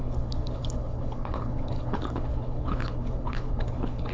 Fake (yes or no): yes